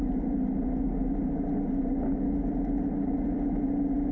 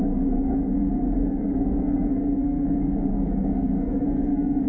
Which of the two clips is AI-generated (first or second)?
second